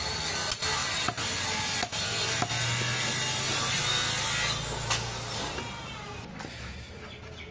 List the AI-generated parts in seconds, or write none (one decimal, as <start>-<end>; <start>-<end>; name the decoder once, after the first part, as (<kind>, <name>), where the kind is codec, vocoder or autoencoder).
none